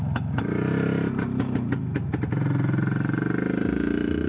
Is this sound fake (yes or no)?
no